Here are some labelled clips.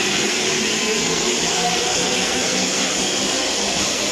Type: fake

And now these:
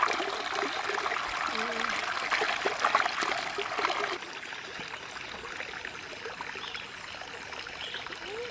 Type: real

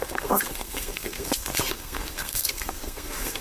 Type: fake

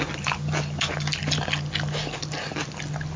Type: real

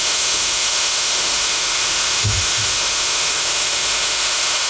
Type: fake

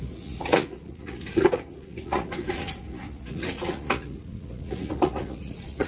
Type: fake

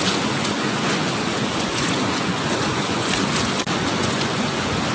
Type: fake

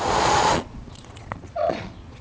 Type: fake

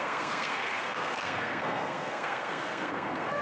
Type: fake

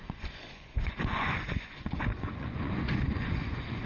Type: fake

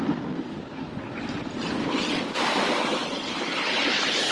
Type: real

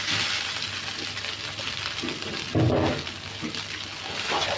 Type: real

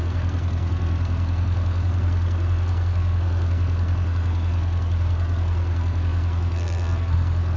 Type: fake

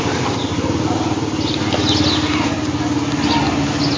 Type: real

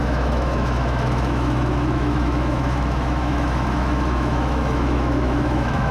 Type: fake